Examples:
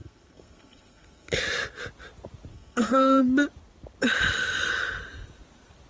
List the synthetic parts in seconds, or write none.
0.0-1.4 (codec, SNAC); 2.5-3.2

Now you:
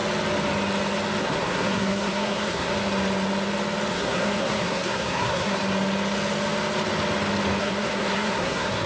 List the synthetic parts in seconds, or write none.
1.2-2.7 (codec, SNAC); 3.9-5.6; 7.6-8.9

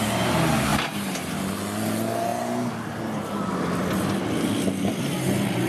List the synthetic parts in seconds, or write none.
none

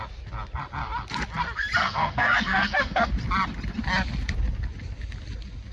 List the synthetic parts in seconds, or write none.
1.8-3.1 (codec, SNAC)

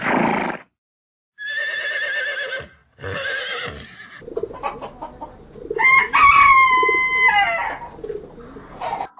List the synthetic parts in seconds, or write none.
none